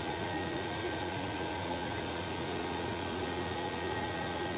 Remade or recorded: remade